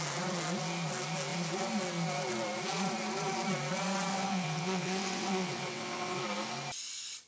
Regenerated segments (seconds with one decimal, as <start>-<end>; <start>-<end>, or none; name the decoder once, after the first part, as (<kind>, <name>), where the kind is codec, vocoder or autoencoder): 4.1-6.2 (vocoder, WaveNeXt)